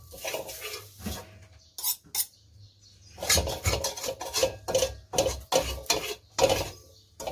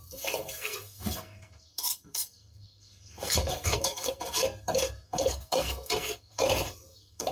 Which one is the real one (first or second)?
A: first